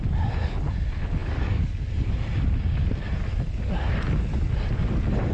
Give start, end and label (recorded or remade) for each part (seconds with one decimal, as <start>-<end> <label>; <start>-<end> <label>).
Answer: 0.0-1.2 recorded; 1.2-1.9 remade; 1.9-5.3 recorded